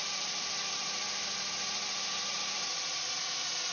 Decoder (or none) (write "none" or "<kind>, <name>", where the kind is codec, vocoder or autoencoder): none